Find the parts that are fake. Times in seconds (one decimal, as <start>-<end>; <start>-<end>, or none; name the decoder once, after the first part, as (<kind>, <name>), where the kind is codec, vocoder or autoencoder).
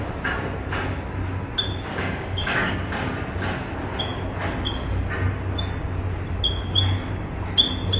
1.9-2.7 (codec, DAC)